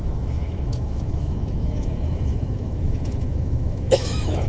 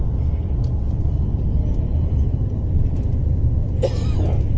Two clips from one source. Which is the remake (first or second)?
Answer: first